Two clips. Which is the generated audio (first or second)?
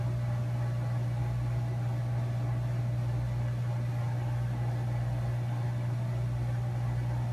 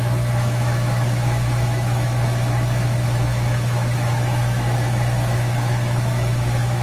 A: second